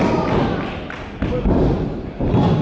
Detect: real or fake real